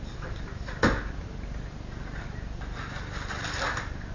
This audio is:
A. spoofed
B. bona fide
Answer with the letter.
B